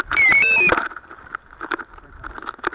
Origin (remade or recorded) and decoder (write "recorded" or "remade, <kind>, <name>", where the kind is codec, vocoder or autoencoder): remade, vocoder, BigVGAN v2